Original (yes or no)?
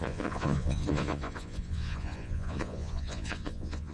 no